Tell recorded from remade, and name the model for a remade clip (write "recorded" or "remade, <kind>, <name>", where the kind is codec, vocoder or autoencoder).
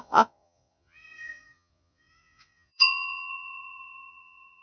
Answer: remade, vocoder, Vocos